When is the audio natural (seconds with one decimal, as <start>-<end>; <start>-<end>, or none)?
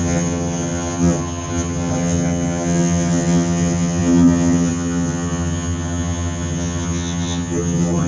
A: none